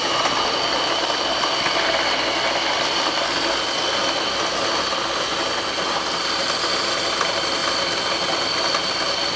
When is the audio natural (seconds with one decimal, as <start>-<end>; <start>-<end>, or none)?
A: 0.0-9.4